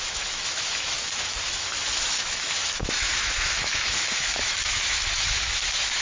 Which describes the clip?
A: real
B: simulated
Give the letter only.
B